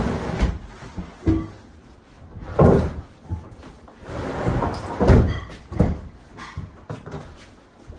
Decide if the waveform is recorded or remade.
recorded